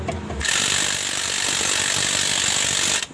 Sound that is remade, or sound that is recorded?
recorded